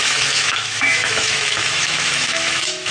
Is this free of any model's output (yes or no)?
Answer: no